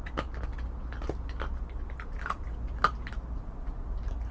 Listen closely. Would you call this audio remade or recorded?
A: recorded